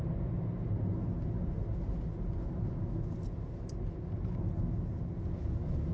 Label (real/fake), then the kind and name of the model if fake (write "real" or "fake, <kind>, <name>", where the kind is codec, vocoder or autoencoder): real